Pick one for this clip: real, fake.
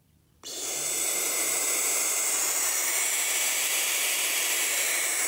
fake